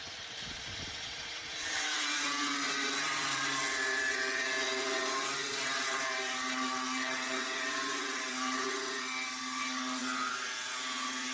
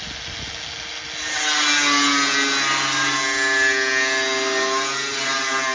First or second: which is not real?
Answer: first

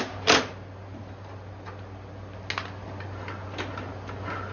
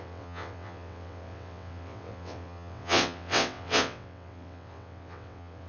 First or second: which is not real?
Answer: second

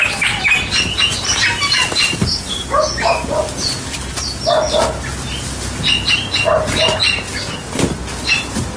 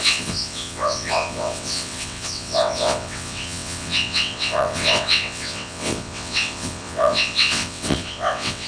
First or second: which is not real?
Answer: second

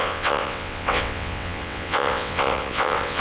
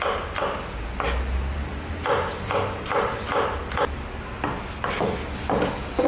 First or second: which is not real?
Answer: first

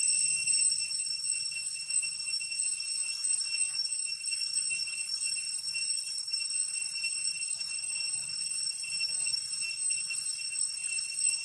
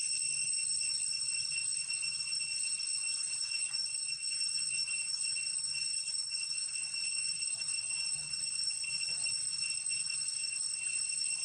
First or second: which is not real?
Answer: second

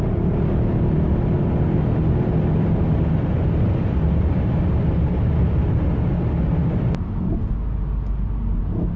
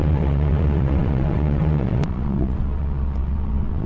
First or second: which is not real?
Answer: second